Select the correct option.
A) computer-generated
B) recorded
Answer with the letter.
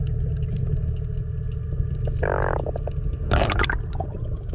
B